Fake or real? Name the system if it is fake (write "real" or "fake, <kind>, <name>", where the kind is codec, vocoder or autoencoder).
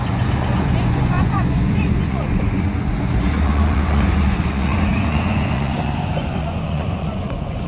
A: fake, vocoder, Vocos